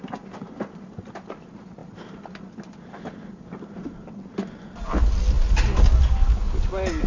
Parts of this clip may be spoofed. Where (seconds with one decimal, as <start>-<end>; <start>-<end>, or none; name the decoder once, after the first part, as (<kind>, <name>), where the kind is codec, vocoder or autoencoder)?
none